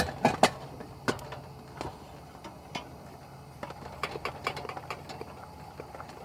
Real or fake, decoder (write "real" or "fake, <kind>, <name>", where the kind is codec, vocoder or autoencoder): real